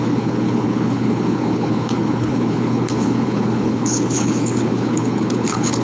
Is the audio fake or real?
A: fake